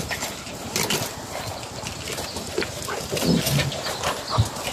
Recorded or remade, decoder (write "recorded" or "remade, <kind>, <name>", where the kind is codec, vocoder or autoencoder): recorded